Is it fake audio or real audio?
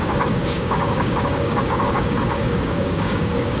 fake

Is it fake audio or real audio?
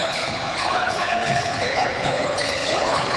fake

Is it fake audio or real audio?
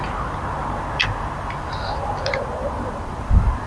real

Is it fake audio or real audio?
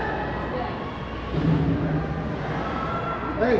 real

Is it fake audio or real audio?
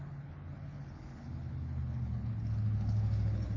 fake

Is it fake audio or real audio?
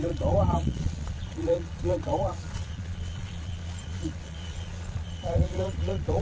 fake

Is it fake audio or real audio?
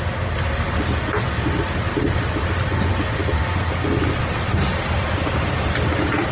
real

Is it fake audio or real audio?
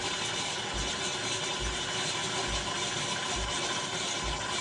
fake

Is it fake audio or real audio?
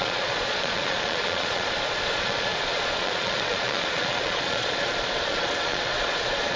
fake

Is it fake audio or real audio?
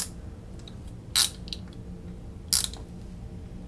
real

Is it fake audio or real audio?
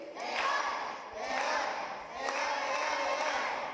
real